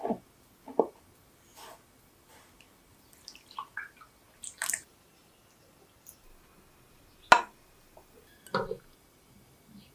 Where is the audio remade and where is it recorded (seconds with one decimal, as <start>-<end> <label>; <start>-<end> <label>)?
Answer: 0.0-9.9 recorded